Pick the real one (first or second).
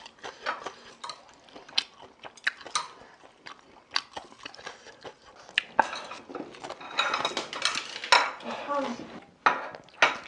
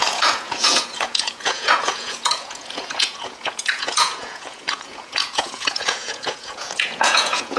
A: first